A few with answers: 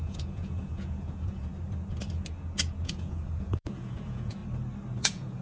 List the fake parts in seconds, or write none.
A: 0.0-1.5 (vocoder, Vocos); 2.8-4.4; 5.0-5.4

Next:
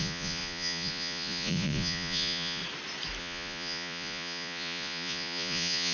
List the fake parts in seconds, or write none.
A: 0.0-2.6 (vocoder, Vocos); 3.2-5.9

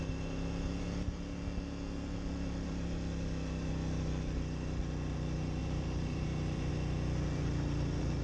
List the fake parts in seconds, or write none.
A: 5.6-6.7 (vocoder, BigVGAN v2)

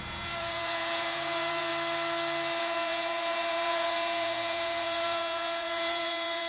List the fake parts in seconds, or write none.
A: 0.0-1.7 (vocoder, Vocos); 2.6-6.5

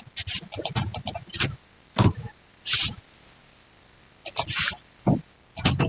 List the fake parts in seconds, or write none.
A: 0.9-2.8 (vocoder, BigVGAN v2); 3.4-5.4

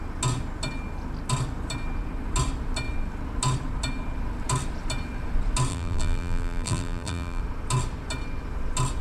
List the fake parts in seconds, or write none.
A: 5.7-7.4 (vocoder, BigVGAN v2)

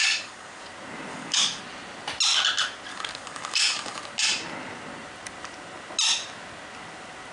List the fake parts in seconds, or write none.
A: 0.0-0.6 (codec, DAC); 1.1-1.6; 2.9-4.0